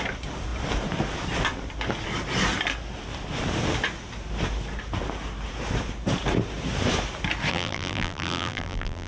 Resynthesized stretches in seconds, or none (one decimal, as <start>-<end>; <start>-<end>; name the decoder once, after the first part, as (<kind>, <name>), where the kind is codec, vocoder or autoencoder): 7.5-9.1 (vocoder, BigVGAN v2)